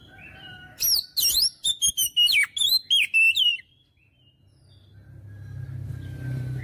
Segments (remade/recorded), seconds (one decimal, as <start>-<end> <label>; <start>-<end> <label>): 0.0-6.6 recorded